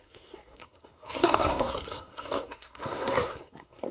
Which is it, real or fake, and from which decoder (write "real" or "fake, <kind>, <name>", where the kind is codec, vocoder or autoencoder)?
fake, codec, SNAC